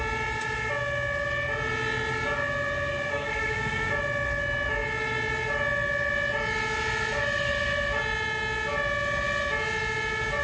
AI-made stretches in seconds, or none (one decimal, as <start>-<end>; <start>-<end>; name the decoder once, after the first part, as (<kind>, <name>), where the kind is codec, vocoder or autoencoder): 3.1-3.9 (codec, SNAC)